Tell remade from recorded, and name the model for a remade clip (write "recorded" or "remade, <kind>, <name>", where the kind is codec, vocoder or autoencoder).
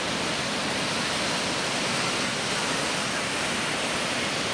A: recorded